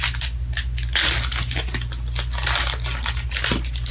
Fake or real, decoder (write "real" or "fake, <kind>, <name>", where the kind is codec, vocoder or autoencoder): real